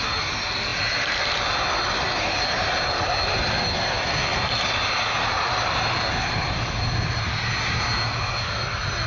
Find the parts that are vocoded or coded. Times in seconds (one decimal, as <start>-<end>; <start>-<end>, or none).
none